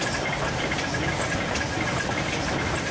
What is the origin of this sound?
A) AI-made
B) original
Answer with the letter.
B